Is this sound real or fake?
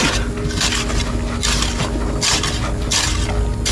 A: real